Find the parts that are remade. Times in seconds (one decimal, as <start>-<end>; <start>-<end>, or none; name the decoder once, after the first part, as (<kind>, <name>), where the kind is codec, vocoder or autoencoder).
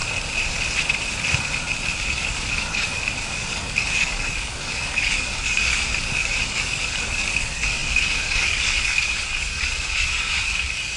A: 2.1-11.0 (codec, DAC)